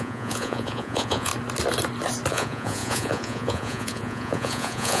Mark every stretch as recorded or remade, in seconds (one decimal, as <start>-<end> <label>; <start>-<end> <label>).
0.0-1.3 remade; 1.3-2.3 recorded; 2.3-5.0 remade